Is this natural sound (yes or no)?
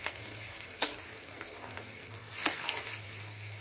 no